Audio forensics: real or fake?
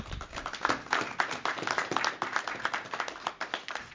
real